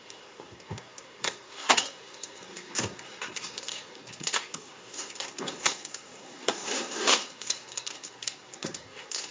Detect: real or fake fake